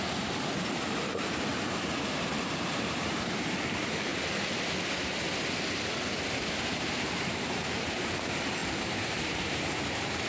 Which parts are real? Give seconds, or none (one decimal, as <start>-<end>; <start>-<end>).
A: 1.5-2.1; 4.1-6.7